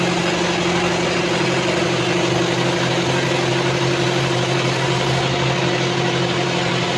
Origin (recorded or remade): recorded